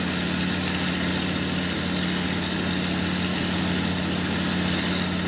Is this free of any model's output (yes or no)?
yes